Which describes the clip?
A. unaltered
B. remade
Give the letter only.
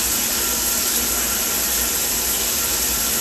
A